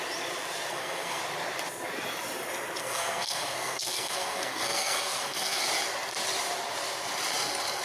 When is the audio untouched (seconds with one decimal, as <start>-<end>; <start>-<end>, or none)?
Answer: 0.0-0.7; 1.2-2.8; 5.6-7.8